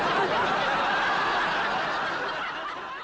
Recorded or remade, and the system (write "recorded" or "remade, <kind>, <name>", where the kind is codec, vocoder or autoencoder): recorded